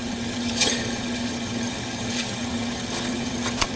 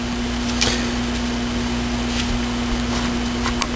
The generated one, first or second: first